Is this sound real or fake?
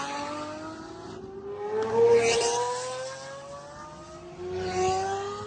real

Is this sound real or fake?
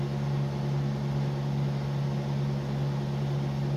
real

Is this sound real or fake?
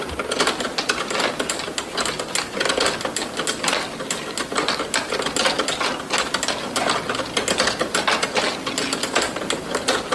real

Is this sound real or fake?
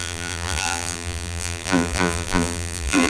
fake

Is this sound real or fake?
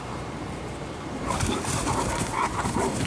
fake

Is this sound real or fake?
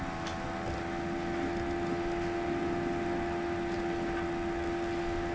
real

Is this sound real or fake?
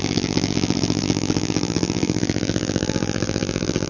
fake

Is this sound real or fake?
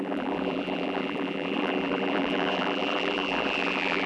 fake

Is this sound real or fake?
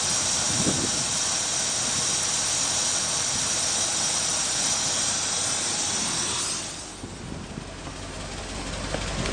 real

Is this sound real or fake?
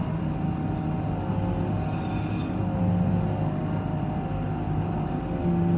real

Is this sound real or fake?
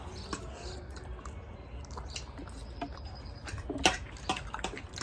real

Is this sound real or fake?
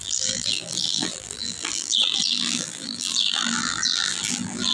fake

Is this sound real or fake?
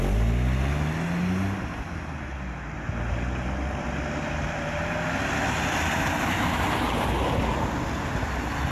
real